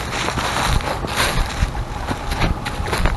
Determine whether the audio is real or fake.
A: real